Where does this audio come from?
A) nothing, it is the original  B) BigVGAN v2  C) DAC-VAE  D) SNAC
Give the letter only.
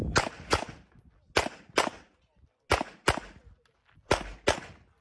A